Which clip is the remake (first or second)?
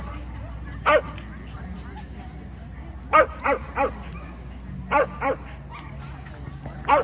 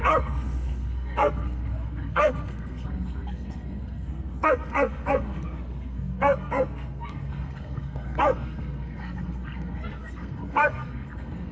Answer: second